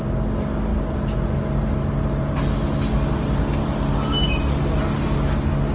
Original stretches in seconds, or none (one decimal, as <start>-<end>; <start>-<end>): 0.0-5.7